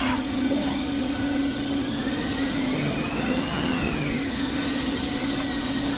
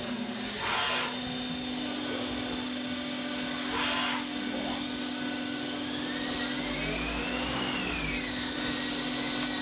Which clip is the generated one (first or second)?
first